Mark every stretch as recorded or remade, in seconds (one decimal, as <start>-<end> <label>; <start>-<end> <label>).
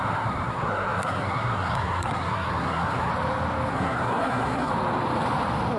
0.0-3.1 remade; 3.1-3.7 recorded; 3.7-4.7 remade; 4.7-5.8 recorded